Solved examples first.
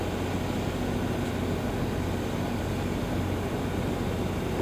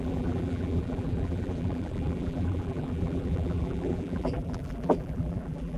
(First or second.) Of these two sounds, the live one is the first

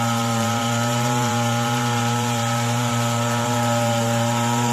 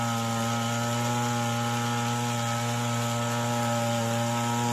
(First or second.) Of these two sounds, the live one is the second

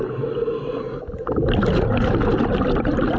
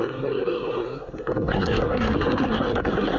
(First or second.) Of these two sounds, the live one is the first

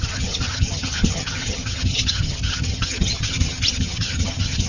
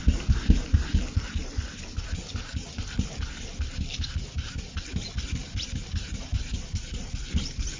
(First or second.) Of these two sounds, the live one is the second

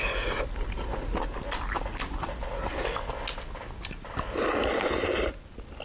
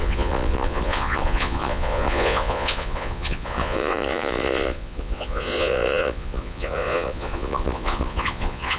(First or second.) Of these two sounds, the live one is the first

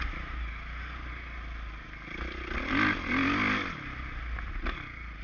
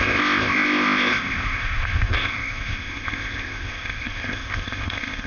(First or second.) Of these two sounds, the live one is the first